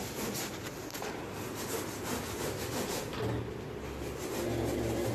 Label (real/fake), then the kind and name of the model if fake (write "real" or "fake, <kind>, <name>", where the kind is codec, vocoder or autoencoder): real